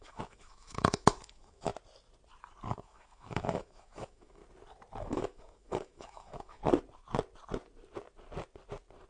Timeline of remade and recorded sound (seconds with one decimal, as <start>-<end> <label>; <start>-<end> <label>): 0.0-1.7 remade; 1.7-2.7 recorded; 2.7-4.4 remade; 4.4-5.0 recorded; 5.0-6.6 remade; 6.6-9.1 recorded